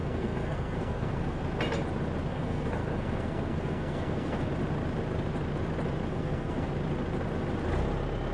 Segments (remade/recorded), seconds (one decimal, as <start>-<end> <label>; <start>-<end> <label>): 0.0-1.4 remade; 1.4-2.3 recorded; 2.3-4.5 remade; 4.5-6.1 recorded; 6.1-6.7 remade; 6.7-8.3 recorded